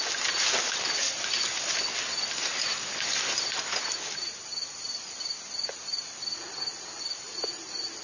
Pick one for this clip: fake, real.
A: real